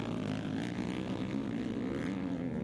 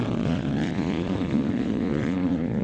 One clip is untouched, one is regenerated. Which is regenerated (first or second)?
second